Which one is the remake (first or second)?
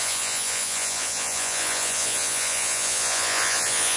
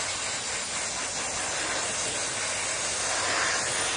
first